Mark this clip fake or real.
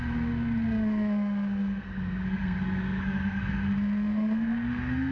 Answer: fake